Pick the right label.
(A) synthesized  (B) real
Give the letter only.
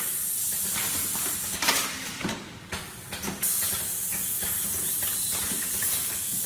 B